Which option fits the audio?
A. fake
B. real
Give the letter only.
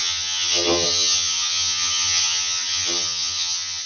A